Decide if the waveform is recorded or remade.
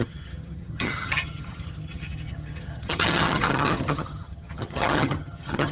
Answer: remade